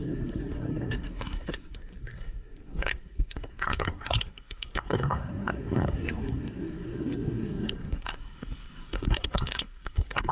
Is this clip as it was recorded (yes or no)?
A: no